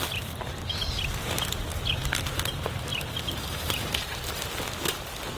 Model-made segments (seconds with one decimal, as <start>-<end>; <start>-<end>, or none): 1.7-2.4; 2.9-4.3